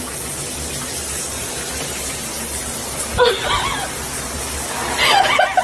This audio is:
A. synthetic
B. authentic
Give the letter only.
B